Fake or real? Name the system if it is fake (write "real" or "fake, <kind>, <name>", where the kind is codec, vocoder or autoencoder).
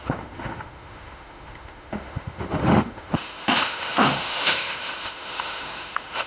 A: fake, autoencoder, DAC-VAE